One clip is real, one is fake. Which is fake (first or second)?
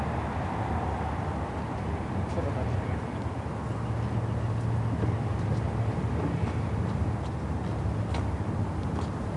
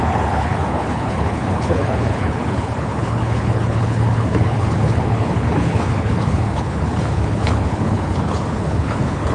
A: second